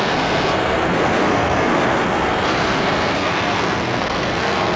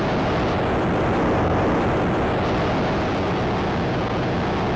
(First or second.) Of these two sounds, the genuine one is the second